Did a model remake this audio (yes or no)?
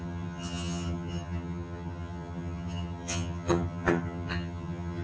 yes